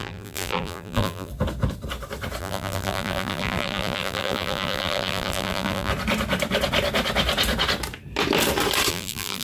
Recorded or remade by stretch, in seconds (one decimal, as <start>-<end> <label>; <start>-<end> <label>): 0.0-1.3 remade; 1.3-2.4 recorded; 2.4-5.9 remade; 5.9-8.9 recorded; 8.9-9.4 remade